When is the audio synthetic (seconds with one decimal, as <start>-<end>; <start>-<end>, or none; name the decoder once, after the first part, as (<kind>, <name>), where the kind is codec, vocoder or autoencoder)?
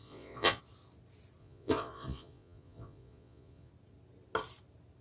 0.0-0.6 (vocoder, Vocos); 1.4-3.7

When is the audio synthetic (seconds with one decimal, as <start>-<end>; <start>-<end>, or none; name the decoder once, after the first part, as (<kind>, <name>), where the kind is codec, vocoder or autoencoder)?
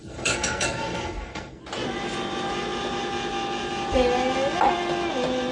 0.0-1.6 (codec, SNAC)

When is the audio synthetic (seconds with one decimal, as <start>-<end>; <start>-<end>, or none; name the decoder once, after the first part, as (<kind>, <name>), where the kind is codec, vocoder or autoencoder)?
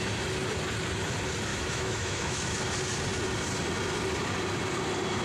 1.5-2.6 (autoencoder, DAC-VAE)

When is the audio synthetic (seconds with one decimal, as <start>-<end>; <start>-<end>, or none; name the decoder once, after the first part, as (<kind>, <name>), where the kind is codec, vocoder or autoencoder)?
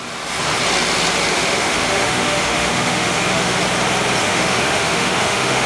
1.3-3.6 (autoencoder, DAC-VAE); 4.2-5.7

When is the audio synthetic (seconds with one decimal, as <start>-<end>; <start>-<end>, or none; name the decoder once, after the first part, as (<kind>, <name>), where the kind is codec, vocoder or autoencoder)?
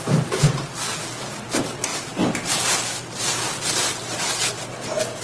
none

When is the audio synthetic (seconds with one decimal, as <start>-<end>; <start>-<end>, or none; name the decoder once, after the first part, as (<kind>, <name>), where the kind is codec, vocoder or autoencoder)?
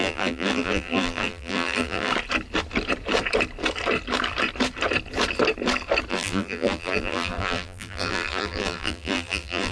0.0-2.1 (vocoder, BigVGAN v2); 6.1-9.7